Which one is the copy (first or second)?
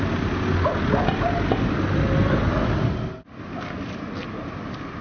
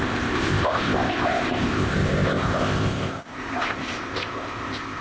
second